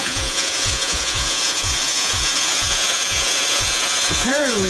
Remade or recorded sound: remade